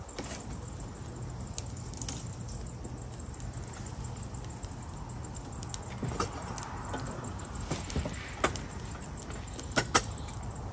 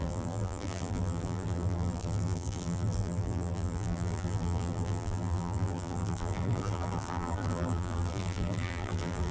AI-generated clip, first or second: second